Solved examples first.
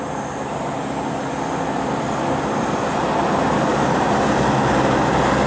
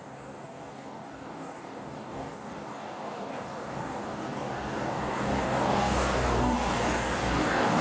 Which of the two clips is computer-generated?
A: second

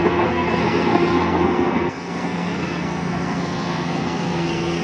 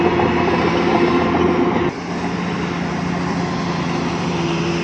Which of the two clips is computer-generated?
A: first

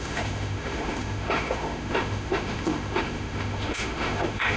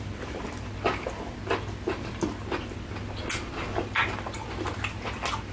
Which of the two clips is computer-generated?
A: first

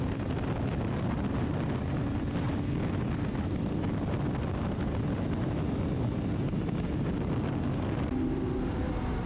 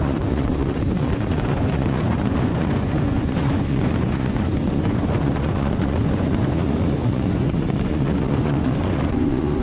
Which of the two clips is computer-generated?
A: second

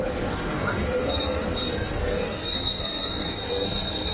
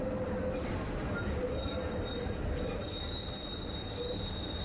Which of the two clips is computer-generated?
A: first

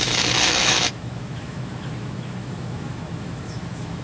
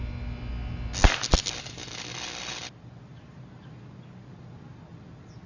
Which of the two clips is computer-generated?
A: first